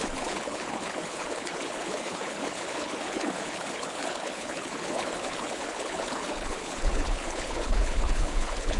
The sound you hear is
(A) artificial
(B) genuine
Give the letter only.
A